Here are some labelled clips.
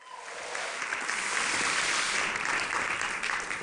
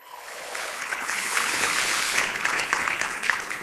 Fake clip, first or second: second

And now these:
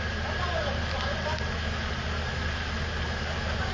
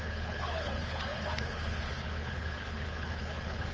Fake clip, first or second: second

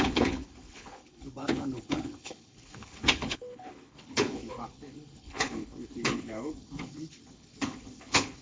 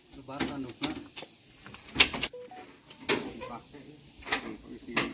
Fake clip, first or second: first